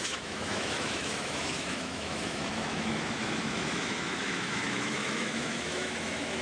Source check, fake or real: fake